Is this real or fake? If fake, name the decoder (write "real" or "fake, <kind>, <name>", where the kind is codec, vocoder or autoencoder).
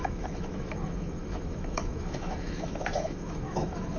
fake, autoencoder, DAC-VAE